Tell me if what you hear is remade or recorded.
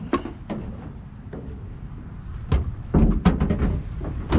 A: recorded